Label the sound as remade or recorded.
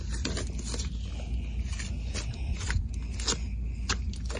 recorded